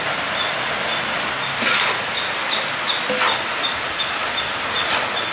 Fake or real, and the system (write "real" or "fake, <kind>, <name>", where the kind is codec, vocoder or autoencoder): real